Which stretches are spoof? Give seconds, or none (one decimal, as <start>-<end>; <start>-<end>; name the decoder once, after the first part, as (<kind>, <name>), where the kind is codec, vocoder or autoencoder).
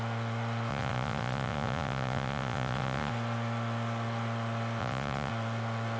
0.7-3.1 (vocoder, Vocos); 4.8-5.3